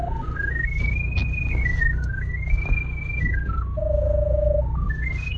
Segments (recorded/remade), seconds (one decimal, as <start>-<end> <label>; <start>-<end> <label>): 0.0-5.4 recorded